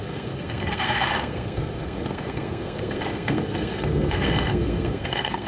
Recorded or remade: remade